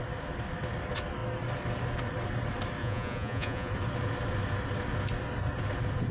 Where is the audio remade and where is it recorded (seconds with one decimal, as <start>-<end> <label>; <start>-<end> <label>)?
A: 0.0-2.8 recorded; 2.8-3.7 remade; 3.7-6.1 recorded